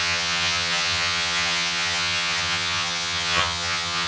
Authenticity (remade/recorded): remade